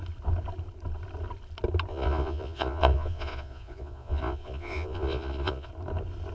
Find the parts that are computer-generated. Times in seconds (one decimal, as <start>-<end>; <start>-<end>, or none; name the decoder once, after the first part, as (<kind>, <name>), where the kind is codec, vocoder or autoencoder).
1.9-5.7 (vocoder, Vocos)